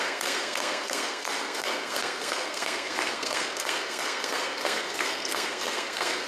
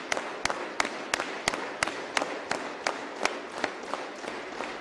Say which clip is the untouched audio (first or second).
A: second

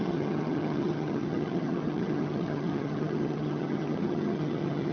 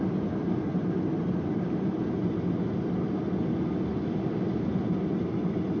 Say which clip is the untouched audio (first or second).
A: second